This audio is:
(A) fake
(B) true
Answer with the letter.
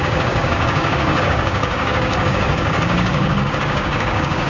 A